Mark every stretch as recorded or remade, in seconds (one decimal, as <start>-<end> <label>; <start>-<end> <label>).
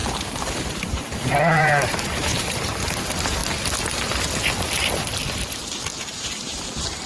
0.0-3.4 remade; 3.4-6.0 recorded; 6.0-7.1 remade